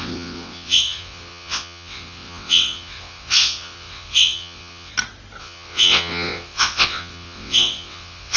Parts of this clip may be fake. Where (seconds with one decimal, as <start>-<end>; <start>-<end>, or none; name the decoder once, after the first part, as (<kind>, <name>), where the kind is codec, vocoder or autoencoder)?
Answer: 0.0-4.9 (vocoder, WaveNeXt); 5.4-8.4